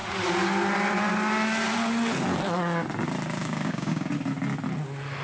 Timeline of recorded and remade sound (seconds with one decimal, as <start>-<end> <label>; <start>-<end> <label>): 0.0-3.4 recorded; 3.4-4.1 remade; 4.1-5.2 recorded